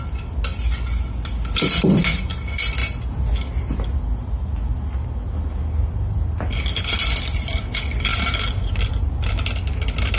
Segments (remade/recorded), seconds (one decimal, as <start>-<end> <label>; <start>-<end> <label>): 0.0-10.2 recorded